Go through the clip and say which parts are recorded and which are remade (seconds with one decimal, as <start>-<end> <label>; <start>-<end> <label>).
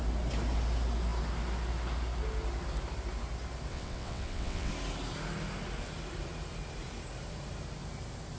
0.0-3.7 recorded; 3.7-4.7 remade; 4.7-8.4 recorded